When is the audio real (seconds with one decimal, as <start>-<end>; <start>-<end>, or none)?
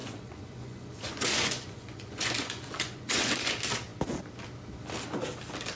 3.5-5.8